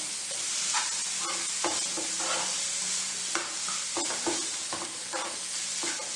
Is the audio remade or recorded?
recorded